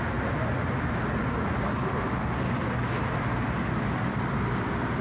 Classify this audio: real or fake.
real